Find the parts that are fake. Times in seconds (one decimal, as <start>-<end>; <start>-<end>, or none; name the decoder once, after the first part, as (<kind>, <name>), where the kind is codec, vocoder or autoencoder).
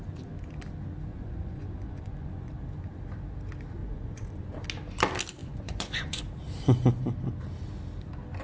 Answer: 1.1-2.5 (vocoder, Vocos); 3.8-4.4; 5.4-6.2